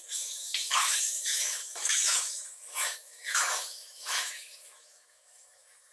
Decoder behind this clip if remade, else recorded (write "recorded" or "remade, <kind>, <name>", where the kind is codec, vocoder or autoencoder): remade, autoencoder, DAC-VAE